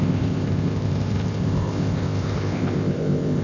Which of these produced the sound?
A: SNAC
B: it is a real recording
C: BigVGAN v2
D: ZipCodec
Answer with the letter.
D